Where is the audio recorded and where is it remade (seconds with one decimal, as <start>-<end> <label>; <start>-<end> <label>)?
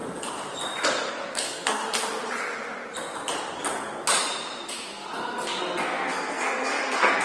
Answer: 0.0-1.1 recorded; 1.1-1.8 remade; 1.8-5.6 recorded; 5.6-7.2 remade